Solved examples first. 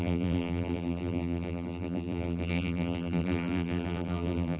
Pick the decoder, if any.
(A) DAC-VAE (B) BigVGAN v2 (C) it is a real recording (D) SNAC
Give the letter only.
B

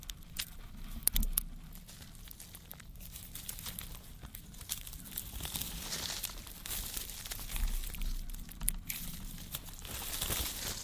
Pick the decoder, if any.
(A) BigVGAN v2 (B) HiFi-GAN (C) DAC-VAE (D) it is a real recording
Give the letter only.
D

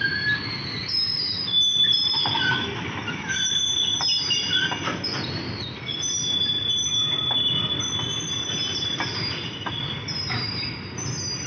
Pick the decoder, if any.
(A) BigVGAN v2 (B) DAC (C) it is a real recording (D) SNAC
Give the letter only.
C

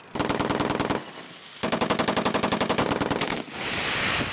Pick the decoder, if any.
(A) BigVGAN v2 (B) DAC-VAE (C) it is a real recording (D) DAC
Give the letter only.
C